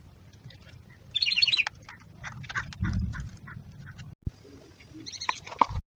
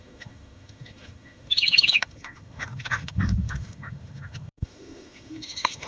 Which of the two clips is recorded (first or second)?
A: first